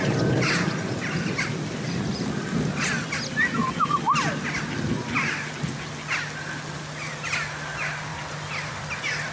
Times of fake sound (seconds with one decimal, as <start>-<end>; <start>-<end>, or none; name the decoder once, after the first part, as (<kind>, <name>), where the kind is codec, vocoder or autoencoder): none